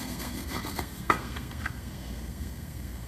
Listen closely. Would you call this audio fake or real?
fake